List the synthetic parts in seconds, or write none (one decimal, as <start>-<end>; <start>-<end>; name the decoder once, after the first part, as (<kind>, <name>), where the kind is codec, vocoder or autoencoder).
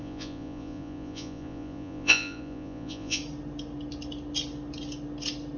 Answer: 0.0-3.2 (vocoder, Vocos)